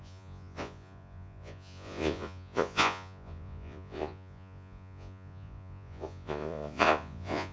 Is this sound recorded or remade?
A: remade